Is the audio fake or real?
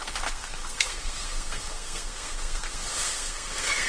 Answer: fake